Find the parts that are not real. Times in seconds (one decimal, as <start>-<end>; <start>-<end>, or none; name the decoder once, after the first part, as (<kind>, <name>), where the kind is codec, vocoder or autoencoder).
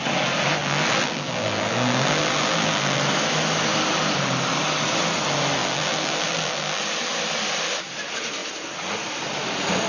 0.6-3.0 (vocoder, BigVGAN v2); 5.6-6.8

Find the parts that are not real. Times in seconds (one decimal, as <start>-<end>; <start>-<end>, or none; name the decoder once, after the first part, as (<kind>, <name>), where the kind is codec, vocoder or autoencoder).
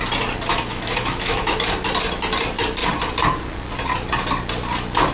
0.5-1.7 (autoencoder, DAC-VAE)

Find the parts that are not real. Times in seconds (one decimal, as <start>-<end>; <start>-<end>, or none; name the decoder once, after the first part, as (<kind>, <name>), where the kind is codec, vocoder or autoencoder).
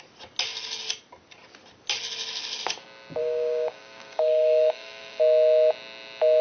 3.2-5.2 (codec, DAC)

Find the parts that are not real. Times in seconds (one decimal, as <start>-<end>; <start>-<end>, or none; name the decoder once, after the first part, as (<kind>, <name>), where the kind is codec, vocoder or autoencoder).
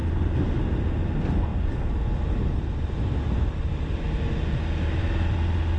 none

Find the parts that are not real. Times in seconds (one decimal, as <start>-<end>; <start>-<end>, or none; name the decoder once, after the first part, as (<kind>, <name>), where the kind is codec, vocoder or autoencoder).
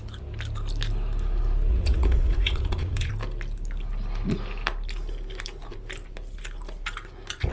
1.7-3.1 (vocoder, Vocos)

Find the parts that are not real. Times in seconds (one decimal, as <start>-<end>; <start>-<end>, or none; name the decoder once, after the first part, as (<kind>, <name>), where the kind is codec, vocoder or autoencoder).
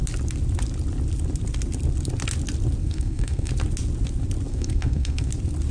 2.8-3.5 (codec, SNAC); 4.5-5.3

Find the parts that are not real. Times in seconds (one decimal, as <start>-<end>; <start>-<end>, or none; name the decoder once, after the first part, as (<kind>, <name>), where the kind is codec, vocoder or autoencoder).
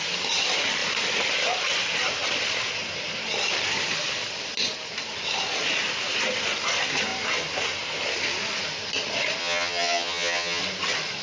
9.4-10.6 (vocoder, HiFi-GAN)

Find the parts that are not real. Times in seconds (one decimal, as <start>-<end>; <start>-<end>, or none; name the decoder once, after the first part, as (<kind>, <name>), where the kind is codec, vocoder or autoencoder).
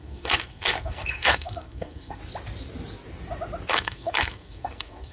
0.0-2.2 (codec, SNAC); 3.7-5.1